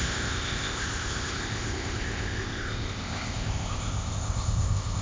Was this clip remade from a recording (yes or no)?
yes